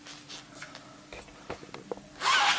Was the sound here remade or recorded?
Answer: recorded